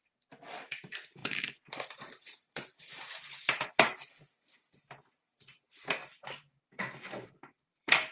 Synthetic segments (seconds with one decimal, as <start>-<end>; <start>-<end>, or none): 0.0-8.1